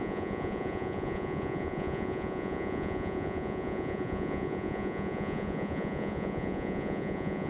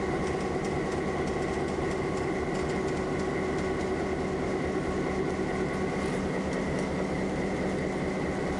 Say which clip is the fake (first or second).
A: first